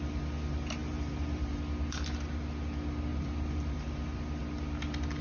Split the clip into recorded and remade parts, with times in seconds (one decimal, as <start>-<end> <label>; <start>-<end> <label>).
0.0-0.8 recorded; 0.8-1.6 remade; 1.6-3.1 recorded; 3.1-3.8 remade; 3.8-5.2 recorded

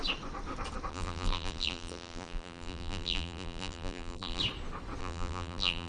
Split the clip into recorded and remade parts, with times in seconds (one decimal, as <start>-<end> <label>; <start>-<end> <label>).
0.0-0.9 recorded; 0.9-4.4 remade; 4.4-5.0 recorded; 5.0-5.9 remade

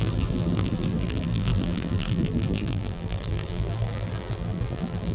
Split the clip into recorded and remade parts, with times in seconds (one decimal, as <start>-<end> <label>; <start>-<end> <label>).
0.0-5.1 remade

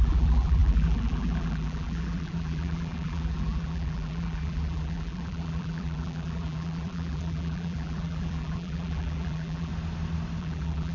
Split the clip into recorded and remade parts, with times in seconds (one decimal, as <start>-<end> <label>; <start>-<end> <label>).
0.0-9.7 remade; 9.7-10.4 recorded; 10.4-10.9 remade

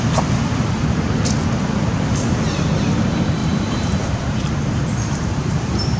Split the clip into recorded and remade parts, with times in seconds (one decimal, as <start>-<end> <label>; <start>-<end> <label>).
0.0-3.4 recorded; 3.4-6.0 remade